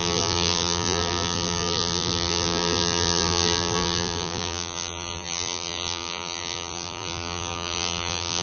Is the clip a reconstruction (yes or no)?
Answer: yes